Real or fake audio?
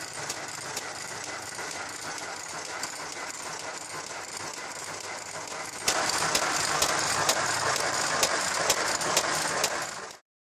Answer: real